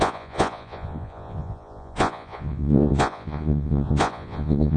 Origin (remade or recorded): remade